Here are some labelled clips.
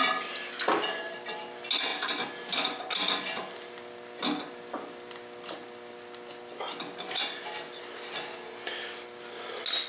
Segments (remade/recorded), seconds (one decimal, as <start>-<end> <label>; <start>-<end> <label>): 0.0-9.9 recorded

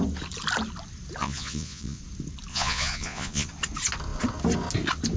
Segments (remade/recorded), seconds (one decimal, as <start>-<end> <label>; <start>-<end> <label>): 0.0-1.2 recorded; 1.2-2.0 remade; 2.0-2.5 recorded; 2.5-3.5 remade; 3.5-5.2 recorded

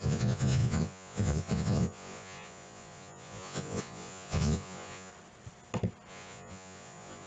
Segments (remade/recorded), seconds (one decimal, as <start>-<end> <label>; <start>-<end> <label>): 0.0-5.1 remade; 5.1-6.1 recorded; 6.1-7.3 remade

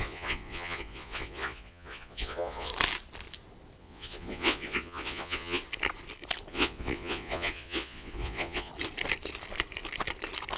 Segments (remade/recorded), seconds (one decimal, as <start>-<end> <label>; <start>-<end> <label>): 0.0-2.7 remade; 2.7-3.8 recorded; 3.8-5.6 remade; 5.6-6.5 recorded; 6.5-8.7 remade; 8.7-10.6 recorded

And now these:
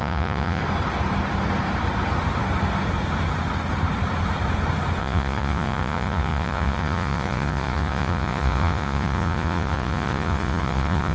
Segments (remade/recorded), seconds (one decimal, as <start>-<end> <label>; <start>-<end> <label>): 0.0-0.6 remade; 0.6-5.0 recorded; 5.0-11.1 remade